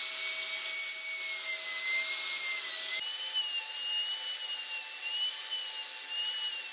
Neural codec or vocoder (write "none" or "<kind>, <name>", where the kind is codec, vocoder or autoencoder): none